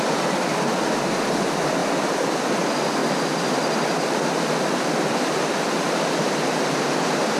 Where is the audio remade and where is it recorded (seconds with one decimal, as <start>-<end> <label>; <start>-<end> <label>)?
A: 0.0-1.8 recorded; 1.8-2.6 remade; 2.6-3.0 recorded; 3.0-6.5 remade; 6.5-7.4 recorded